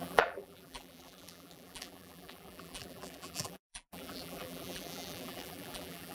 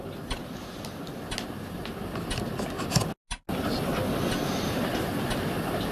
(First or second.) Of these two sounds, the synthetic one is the first